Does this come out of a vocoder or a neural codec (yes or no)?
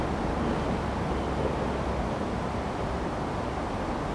no